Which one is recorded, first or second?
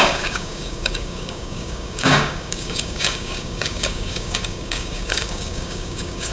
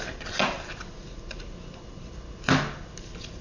second